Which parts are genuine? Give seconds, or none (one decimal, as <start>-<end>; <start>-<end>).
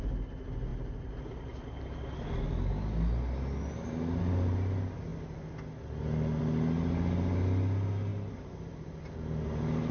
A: 0.0-9.9